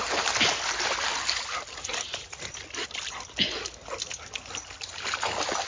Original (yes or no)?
yes